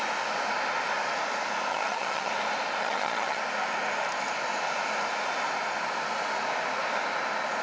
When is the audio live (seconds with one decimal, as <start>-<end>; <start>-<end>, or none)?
0.0-1.7; 2.3-2.8; 3.4-7.6